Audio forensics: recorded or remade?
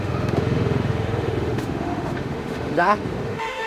remade